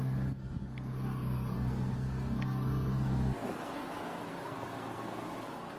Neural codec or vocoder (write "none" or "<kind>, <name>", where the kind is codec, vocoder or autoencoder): codec, SNAC